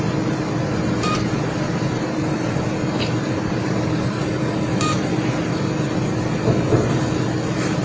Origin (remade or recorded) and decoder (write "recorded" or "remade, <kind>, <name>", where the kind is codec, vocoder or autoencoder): recorded